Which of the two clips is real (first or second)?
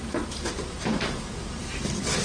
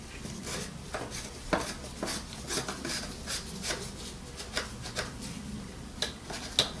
second